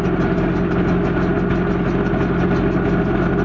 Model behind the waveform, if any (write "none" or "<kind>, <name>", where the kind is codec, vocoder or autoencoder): none